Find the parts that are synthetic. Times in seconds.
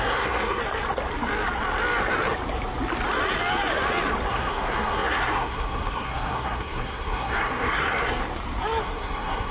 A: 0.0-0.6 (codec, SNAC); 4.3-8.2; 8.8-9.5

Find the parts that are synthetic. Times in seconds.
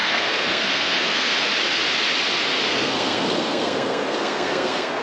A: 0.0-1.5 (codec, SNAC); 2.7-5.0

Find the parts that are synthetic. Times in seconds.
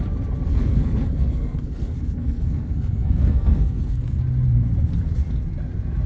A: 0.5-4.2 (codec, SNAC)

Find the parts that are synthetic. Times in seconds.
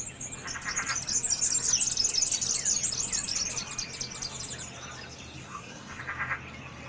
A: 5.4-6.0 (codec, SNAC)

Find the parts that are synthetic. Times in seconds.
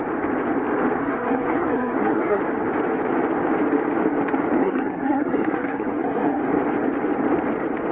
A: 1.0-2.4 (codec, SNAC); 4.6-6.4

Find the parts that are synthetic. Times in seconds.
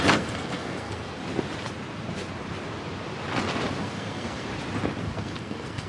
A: 0.0-1.2 (codec, SNAC); 3.8-4.5; 5.0-5.9